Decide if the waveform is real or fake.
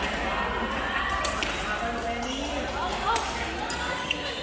real